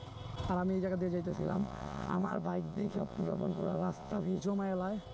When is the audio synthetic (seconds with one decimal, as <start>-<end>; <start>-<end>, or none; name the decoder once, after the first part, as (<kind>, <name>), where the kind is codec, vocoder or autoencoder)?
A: 1.3-4.4 (vocoder, Vocos)